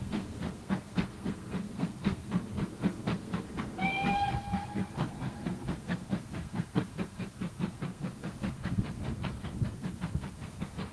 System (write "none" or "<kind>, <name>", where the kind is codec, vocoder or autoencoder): codec, SNAC